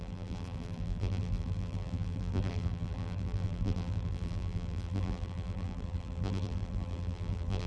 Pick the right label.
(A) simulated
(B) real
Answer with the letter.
A